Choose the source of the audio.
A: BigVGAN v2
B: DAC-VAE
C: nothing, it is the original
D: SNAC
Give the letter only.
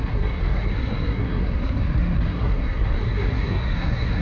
D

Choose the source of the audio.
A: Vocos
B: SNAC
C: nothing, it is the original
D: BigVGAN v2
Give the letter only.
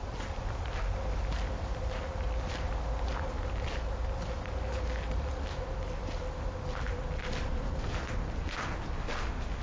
C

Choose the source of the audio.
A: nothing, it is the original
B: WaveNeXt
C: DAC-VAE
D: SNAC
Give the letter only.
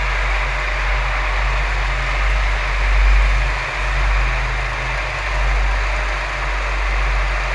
A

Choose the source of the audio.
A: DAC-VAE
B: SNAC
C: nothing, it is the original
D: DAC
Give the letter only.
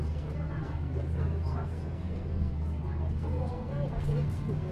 B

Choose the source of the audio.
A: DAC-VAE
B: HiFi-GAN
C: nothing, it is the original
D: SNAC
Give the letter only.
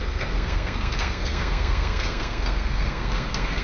D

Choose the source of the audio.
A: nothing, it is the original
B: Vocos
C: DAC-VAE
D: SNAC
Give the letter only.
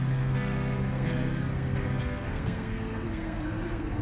D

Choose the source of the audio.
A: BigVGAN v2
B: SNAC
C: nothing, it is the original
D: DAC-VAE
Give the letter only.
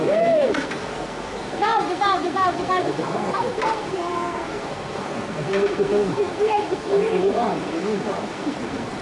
B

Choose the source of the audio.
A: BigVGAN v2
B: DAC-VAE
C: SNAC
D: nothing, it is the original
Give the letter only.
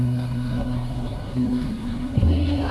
C